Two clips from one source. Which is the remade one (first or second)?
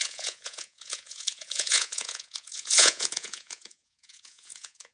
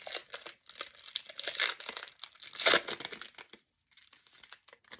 first